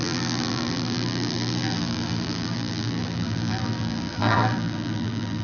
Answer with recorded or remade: remade